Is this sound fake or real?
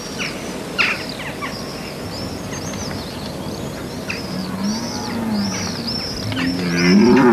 real